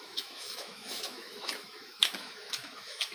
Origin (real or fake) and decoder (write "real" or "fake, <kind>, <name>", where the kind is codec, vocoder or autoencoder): fake, autoencoder, DAC-VAE